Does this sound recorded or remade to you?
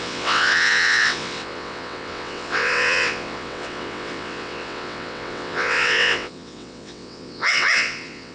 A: remade